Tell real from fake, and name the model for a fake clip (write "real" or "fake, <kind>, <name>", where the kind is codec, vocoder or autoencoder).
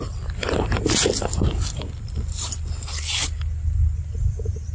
real